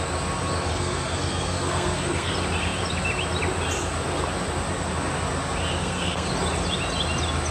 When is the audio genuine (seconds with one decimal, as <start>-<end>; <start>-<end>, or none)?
0.0-0.7; 2.3-5.8; 6.3-7.5